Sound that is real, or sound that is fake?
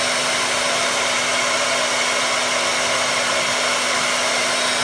real